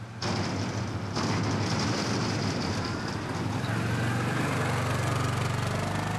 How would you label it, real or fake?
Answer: real